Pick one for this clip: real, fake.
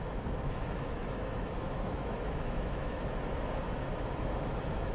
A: fake